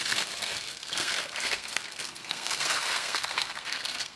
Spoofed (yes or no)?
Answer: yes